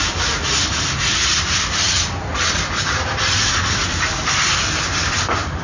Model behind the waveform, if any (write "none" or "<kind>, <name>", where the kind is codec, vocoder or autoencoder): none